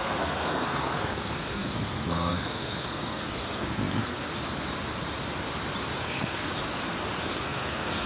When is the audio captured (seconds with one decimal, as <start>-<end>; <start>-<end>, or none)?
4.3-6.0; 6.5-7.2